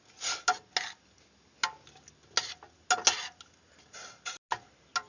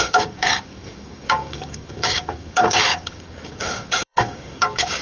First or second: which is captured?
first